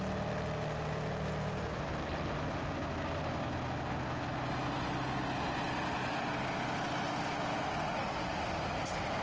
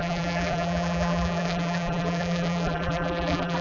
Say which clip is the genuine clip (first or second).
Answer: first